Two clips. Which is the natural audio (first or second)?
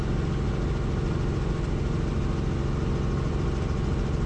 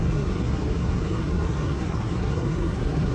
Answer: first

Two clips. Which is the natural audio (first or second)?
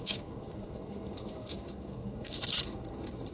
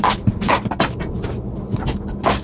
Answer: second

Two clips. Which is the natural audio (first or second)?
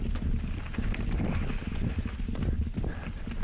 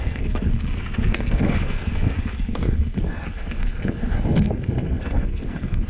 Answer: first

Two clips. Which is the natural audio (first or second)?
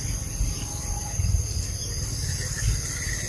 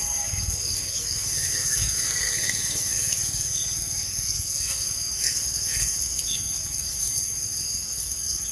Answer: first